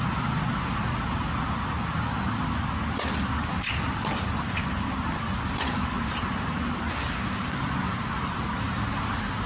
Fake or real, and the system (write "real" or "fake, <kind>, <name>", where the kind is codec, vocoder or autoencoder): real